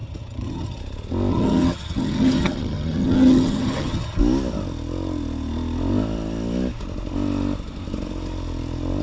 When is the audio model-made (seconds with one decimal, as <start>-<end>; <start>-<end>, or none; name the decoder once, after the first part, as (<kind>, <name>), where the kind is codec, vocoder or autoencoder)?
0.0-0.8 (vocoder, HiFi-GAN); 1.3-4.2